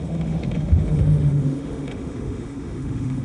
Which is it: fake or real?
fake